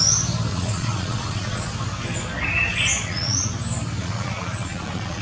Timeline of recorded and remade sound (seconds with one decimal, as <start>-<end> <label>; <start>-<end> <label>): 0.0-0.5 recorded; 0.5-1.7 remade; 1.7-2.9 recorded; 2.9-3.5 remade; 3.5-4.0 recorded; 4.0-5.2 remade